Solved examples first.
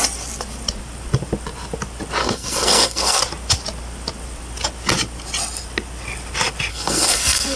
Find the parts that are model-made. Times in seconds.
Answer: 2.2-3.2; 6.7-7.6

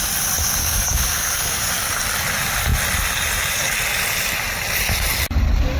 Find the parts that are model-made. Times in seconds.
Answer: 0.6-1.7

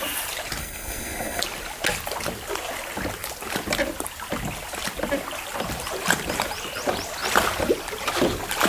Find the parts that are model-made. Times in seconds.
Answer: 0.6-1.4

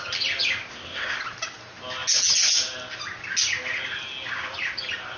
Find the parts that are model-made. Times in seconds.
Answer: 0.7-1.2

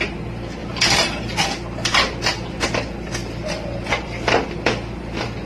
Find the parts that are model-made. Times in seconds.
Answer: 0.6-1.4; 3.2-5.5

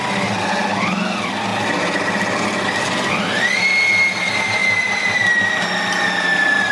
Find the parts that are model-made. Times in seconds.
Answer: none

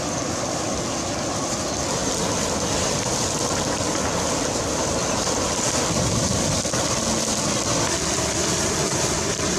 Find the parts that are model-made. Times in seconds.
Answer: none